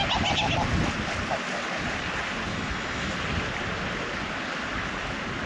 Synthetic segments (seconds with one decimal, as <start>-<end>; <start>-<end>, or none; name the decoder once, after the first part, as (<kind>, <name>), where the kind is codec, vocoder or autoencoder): 2.5-3.1 (autoencoder, DAC-VAE)